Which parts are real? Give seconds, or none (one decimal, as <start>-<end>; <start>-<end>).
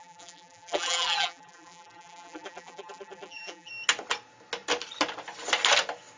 3.7-6.2